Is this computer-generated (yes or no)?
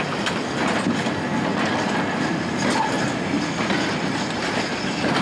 no